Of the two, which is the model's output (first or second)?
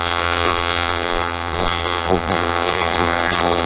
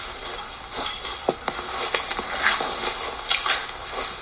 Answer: first